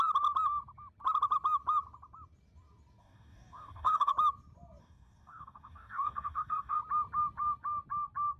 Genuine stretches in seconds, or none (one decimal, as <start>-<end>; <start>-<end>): 0.0-3.0; 4.1-4.8; 6.8-8.4

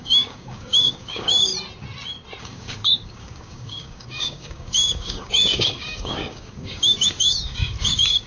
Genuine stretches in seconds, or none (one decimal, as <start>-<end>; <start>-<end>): 1.5-2.4

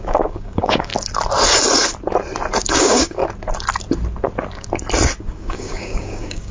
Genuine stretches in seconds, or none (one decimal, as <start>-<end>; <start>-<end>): 0.9-2.7; 3.2-5.2

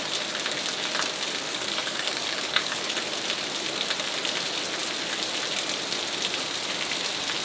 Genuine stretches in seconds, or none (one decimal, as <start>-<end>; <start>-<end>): 0.0-1.5; 2.8-7.4